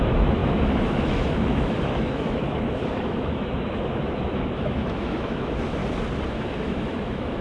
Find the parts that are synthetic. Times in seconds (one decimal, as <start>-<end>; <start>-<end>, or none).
0.0-5.8; 6.3-7.4